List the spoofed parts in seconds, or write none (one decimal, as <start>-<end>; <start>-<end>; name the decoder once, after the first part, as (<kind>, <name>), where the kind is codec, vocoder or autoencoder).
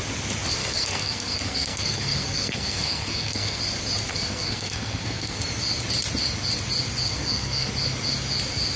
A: 0.6-3.6 (codec, SNAC); 4.1-5.4; 7.1-7.7